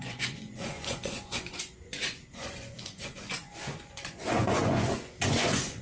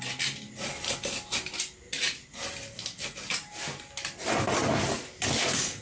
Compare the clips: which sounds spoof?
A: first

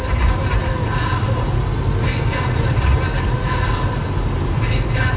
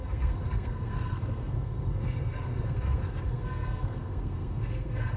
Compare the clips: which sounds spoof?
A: second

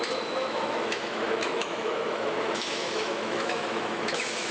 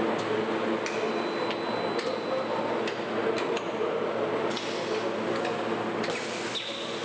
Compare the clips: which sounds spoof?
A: first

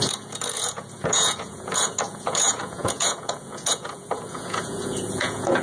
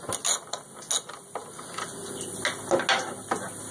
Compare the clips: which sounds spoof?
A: first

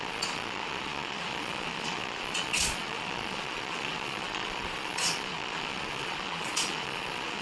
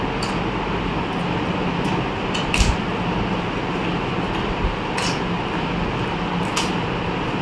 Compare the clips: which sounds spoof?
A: first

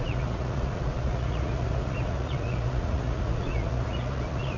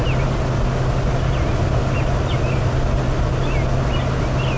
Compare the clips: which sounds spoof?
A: first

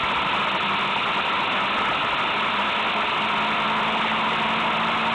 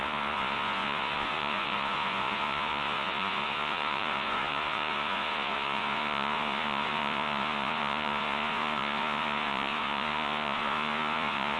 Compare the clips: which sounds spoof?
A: second